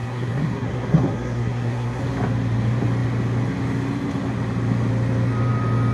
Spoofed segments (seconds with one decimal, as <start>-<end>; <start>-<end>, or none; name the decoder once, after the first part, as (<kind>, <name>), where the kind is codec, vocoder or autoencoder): 0.0-2.0 (codec, SNAC)

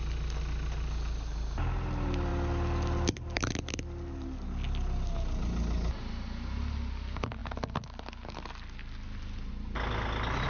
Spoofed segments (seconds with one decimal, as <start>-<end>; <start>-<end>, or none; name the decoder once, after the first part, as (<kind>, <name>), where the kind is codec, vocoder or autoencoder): none

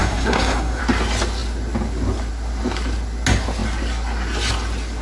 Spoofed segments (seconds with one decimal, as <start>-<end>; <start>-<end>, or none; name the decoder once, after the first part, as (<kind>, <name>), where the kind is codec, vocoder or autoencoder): 0.0-0.8 (codec, SNAC)

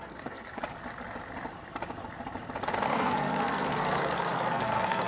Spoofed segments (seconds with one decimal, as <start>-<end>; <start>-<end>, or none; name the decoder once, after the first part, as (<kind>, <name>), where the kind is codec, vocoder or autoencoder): 0.0-0.6 (codec, SNAC); 2.9-5.1

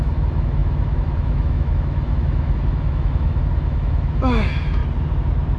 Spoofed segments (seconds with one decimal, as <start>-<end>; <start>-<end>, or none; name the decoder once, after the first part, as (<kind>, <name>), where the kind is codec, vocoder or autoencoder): 0.0-4.8 (autoencoder, DAC-VAE)

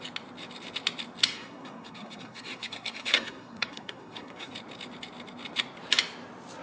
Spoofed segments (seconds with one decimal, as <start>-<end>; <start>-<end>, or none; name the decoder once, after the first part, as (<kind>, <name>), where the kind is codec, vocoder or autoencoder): 1.2-4.5 (codec, SNAC)